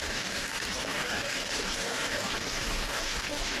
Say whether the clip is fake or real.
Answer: fake